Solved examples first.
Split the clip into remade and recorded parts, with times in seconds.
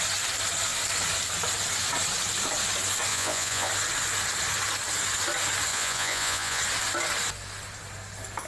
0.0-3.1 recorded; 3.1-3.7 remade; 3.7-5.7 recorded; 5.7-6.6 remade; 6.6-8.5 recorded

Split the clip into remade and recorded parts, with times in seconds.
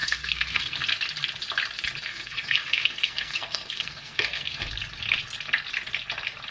0.0-0.8 remade; 0.8-2.1 recorded; 2.1-4.7 remade; 4.7-6.5 recorded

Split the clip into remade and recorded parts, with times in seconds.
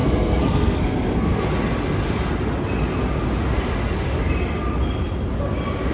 0.0-1.4 remade; 1.4-5.9 recorded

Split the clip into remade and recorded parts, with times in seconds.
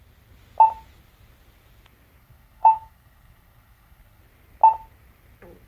0.0-2.2 recorded; 2.2-4.2 remade; 4.2-5.7 recorded